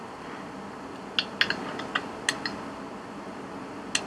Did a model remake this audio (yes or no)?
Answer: no